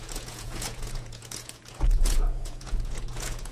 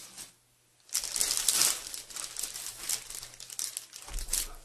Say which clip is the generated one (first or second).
first